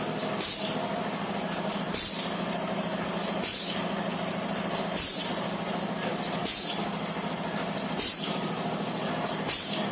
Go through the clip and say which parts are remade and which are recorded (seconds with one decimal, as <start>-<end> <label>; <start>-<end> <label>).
0.0-9.9 recorded